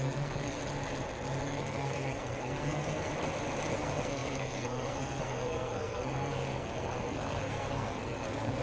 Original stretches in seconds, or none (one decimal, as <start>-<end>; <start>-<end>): 0.6-1.4; 3.1-3.7